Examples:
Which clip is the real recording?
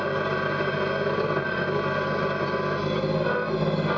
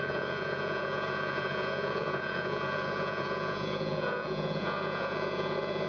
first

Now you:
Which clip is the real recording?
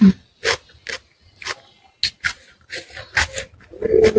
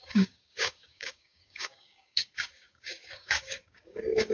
first